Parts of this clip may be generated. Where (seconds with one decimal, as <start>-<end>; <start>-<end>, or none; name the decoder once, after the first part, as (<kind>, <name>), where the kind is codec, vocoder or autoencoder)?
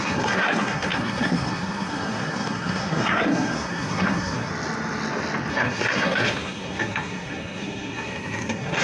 0.0-4.5 (codec, SNAC); 5.5-8.8